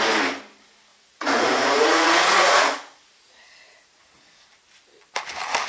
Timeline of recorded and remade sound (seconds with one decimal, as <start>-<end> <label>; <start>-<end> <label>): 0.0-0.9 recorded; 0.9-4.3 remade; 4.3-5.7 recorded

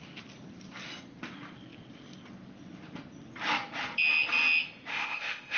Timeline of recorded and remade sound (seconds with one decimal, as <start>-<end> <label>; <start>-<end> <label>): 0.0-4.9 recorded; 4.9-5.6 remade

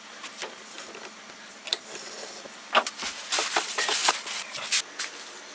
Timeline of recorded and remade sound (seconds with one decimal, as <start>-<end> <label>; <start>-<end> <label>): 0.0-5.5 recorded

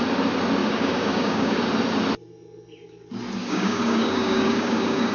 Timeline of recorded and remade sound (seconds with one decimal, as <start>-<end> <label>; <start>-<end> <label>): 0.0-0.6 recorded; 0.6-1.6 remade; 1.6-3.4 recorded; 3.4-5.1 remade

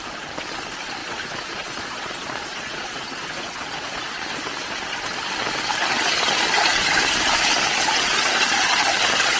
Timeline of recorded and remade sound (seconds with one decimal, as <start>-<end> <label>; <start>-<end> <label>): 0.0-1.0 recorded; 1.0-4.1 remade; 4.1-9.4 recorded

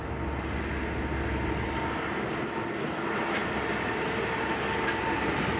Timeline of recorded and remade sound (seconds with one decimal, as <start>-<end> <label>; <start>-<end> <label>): 0.0-5.6 recorded

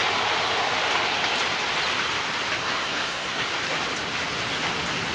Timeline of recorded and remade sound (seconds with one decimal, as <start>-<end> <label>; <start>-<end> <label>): 0.0-2.6 recorded; 2.6-3.5 remade; 3.5-5.1 recorded

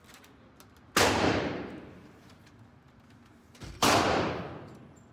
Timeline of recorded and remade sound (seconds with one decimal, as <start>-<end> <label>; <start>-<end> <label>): 0.0-1.3 recorded; 1.3-4.4 remade; 4.4-5.1 recorded